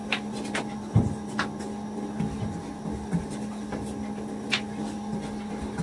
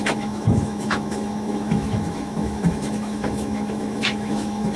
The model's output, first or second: second